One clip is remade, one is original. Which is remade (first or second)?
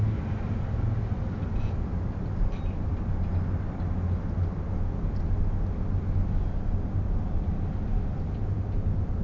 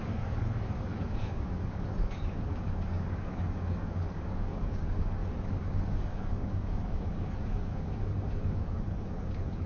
second